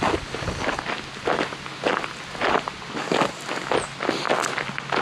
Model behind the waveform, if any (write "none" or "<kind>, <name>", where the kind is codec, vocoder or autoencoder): none